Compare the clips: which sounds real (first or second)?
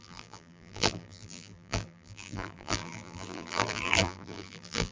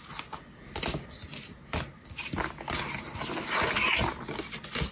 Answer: second